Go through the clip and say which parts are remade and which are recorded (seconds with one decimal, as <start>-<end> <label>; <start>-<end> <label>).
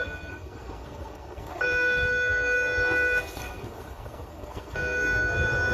0.0-5.7 remade